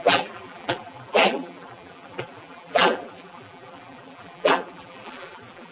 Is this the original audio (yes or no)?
no